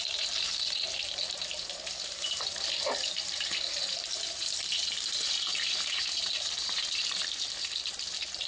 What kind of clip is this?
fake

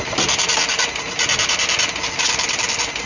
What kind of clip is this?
real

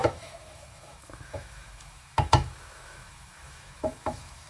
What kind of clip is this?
fake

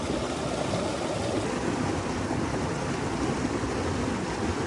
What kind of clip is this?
real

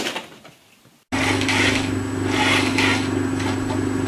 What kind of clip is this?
real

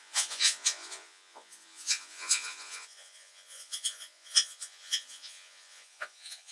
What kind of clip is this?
fake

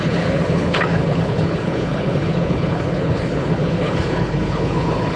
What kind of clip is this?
fake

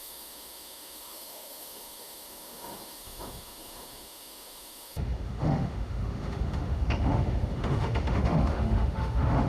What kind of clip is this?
fake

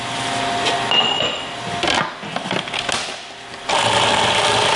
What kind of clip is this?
real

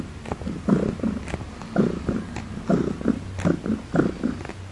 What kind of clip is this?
real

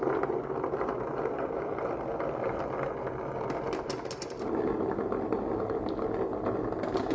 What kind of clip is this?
real